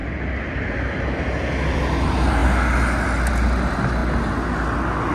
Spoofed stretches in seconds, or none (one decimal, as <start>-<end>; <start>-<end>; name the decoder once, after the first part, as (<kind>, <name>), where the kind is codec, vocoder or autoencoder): none